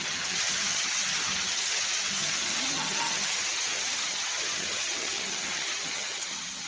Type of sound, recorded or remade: remade